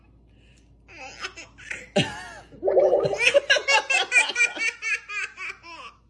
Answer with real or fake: real